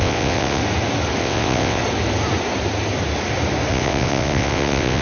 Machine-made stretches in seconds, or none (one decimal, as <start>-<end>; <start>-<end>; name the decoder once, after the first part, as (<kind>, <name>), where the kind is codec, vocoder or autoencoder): 0.0-0.6 (vocoder, WaveNeXt); 1.2-1.8; 3.7-5.0